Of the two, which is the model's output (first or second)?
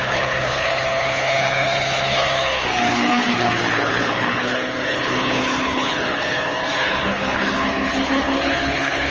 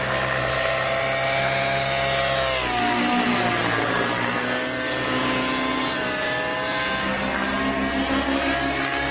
first